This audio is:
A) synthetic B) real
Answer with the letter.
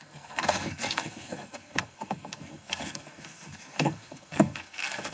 A